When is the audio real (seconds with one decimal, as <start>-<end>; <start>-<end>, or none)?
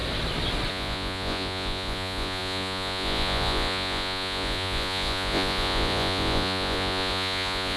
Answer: 0.0-0.7